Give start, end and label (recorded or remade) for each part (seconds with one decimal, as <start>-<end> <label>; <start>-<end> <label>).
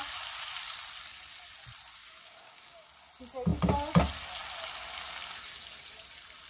0.0-2.0 recorded; 2.0-2.9 remade; 2.9-6.5 recorded